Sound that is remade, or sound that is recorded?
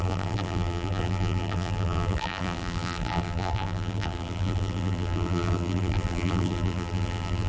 remade